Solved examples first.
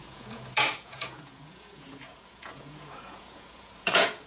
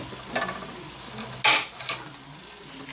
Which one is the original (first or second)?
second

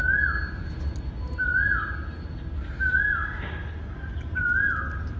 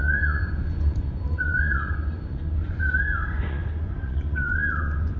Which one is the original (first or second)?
first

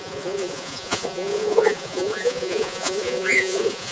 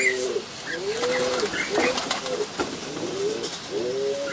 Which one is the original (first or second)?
second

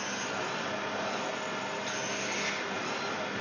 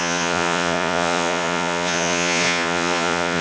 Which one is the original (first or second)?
first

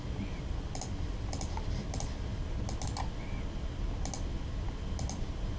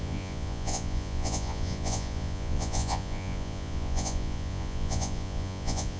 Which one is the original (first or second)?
first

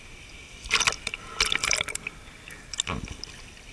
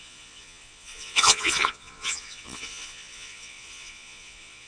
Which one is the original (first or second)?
first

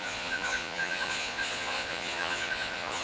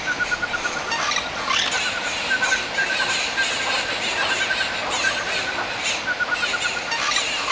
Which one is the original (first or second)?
second